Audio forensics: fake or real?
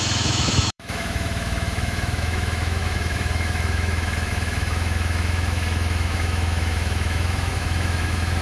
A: fake